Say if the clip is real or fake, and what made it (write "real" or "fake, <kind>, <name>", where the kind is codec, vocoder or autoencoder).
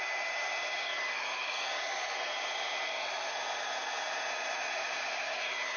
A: real